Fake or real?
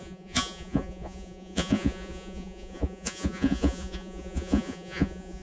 fake